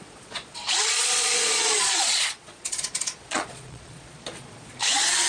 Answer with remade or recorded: remade